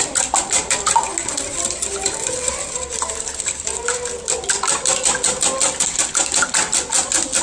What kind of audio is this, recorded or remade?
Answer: recorded